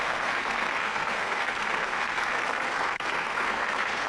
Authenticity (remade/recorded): remade